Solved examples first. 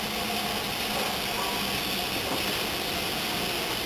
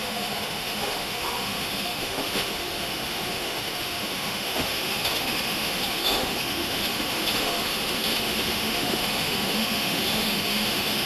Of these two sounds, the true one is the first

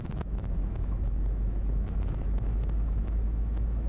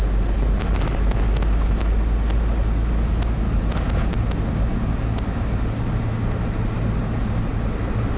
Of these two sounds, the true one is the second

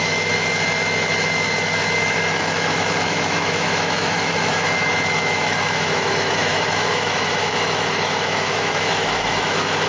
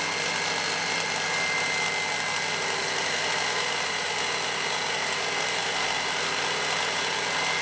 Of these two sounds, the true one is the second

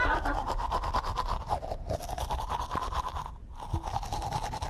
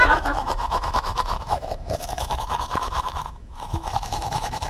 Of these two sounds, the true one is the first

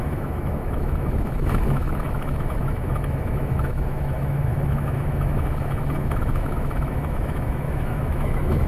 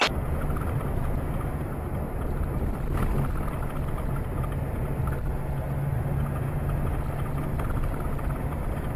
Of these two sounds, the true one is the second